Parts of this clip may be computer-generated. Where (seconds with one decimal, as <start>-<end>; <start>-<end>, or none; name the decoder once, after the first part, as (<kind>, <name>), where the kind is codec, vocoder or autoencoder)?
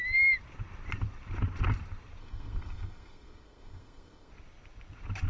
2.2-4.3 (codec, SNAC)